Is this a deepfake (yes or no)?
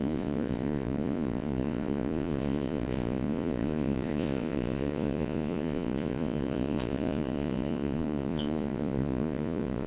yes